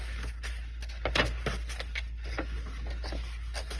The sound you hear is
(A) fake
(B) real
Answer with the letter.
B